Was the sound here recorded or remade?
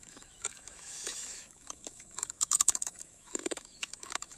remade